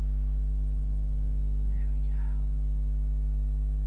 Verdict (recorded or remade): recorded